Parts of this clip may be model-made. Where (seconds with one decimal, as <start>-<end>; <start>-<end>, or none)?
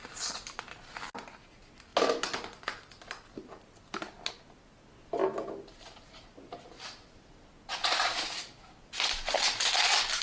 none